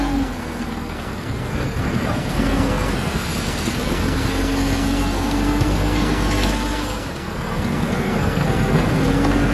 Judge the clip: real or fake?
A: fake